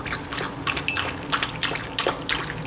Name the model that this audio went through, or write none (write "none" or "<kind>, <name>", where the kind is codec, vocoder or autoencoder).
none